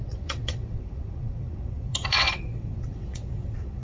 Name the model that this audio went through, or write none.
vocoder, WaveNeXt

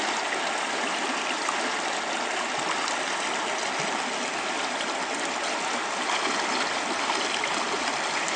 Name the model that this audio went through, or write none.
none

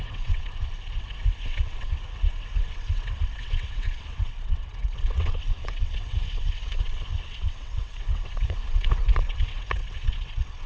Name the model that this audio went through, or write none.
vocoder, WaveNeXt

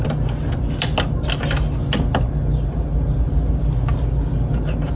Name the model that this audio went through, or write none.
none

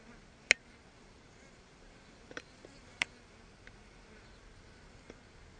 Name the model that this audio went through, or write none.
none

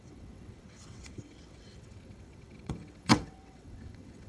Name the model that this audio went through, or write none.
vocoder, WaveNeXt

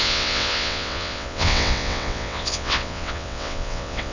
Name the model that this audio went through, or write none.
vocoder, WaveNeXt